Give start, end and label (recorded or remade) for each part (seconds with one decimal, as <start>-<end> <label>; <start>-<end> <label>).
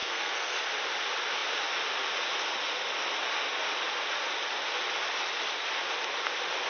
0.0-0.6 remade; 0.6-6.7 recorded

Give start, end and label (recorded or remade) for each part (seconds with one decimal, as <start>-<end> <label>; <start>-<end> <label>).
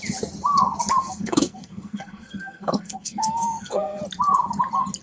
0.0-1.0 recorded; 1.0-4.0 remade; 4.0-5.0 recorded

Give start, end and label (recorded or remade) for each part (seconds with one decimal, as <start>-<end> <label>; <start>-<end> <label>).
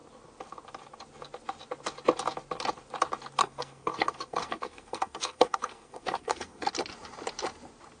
0.0-3.4 recorded; 3.4-6.7 remade; 6.7-8.0 recorded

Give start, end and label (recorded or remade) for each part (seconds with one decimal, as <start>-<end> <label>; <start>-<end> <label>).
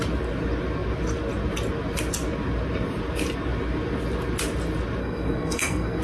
0.0-5.0 recorded; 5.0-6.0 remade